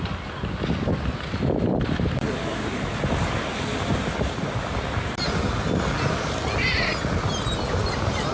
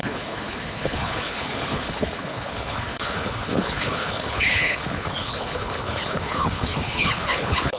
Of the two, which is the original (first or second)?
first